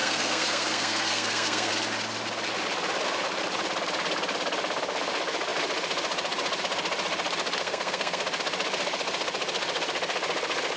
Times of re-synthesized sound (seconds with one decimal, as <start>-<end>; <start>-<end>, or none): 0.0-1.7; 7.6-8.2